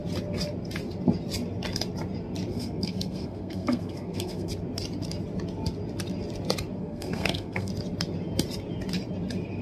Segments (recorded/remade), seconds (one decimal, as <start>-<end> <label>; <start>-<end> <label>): 0.0-2.5 recorded; 2.5-4.5 remade; 4.5-6.8 recorded; 6.8-7.7 remade; 7.7-9.6 recorded